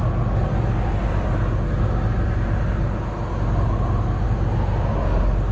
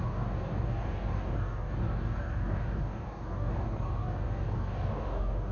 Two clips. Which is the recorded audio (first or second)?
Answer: first